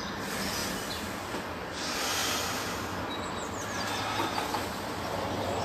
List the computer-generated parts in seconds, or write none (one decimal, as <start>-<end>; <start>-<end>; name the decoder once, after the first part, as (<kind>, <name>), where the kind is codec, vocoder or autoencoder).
none